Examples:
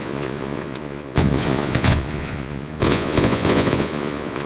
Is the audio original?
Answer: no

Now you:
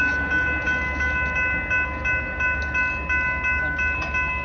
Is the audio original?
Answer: yes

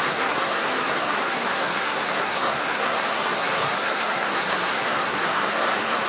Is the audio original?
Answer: no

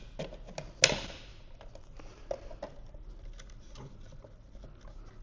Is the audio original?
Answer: yes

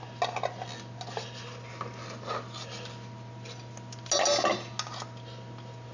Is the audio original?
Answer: yes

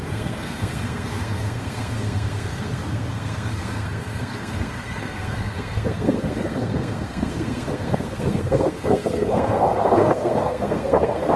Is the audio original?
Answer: no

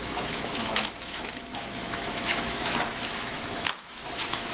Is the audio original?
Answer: no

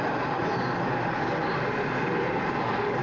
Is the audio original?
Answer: yes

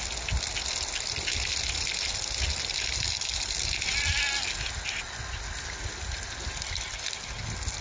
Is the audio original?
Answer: yes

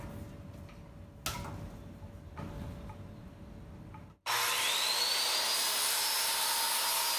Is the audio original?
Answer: yes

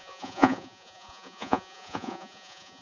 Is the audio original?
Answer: no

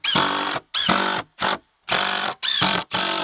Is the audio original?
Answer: no